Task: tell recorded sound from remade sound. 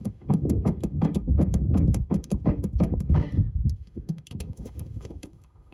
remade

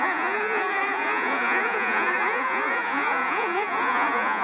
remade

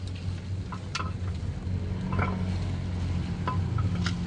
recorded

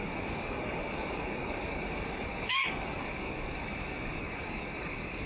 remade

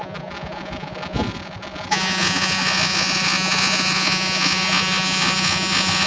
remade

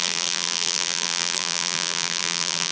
remade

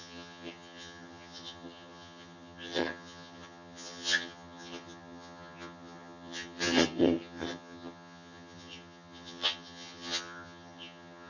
remade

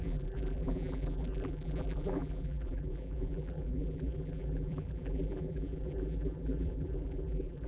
remade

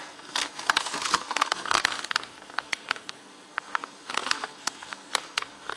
remade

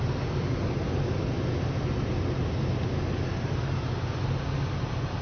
recorded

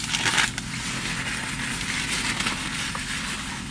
recorded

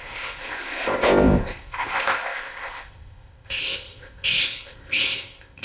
remade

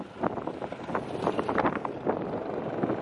recorded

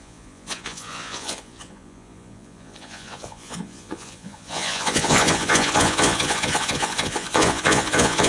remade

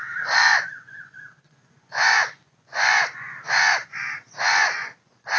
remade